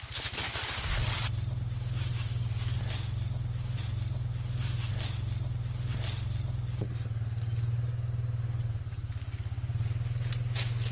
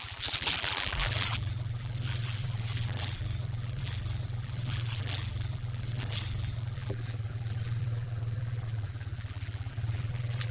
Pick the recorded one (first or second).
first